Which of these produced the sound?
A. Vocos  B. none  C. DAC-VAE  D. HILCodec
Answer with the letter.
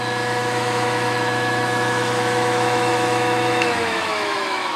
C